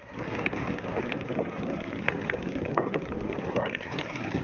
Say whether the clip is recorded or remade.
remade